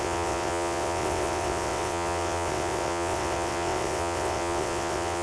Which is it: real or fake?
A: fake